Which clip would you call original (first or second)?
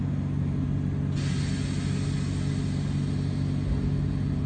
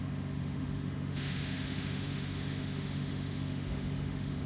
first